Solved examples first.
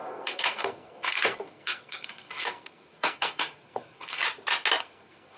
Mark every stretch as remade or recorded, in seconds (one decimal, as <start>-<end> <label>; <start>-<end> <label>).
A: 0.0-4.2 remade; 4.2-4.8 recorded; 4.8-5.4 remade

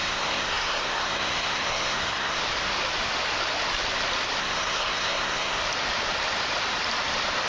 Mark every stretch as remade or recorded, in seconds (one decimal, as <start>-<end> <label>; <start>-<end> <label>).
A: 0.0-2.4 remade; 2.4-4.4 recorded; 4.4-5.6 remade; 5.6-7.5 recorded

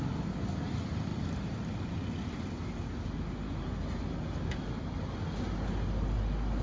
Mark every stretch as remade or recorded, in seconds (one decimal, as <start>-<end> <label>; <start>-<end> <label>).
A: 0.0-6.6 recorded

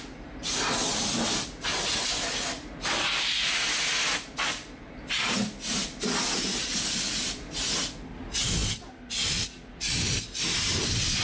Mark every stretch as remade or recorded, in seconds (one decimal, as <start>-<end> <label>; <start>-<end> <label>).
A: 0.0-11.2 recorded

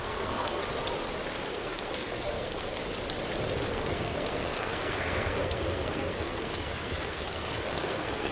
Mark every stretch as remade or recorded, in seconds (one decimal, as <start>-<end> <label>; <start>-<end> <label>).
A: 0.0-0.6 remade; 0.6-1.5 recorded; 1.5-2.8 remade; 2.8-3.7 recorded; 3.7-8.3 remade